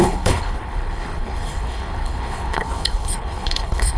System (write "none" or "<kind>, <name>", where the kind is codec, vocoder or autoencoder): codec, HILCodec